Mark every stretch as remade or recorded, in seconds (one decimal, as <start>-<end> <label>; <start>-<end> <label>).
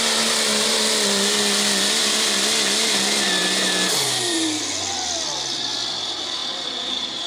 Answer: 0.0-7.3 recorded